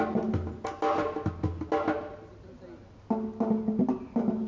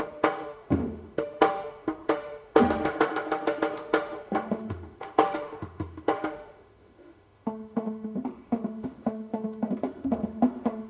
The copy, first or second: second